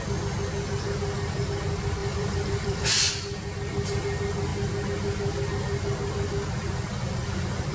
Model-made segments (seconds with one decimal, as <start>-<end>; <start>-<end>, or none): 2.0-3.1